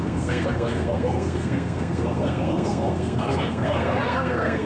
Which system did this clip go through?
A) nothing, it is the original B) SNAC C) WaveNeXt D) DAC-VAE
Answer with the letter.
B